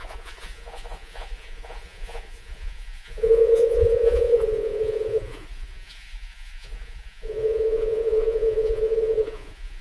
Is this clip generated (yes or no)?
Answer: yes